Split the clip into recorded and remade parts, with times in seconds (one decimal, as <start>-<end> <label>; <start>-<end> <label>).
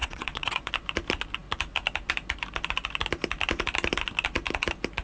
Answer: 0.0-0.7 remade; 0.7-5.0 recorded